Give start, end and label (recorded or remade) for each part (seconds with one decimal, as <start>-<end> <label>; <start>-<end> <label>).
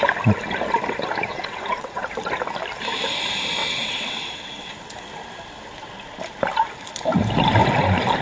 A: 0.0-1.3 recorded; 1.3-2.0 remade; 2.0-3.6 recorded; 3.6-4.7 remade; 4.7-8.2 recorded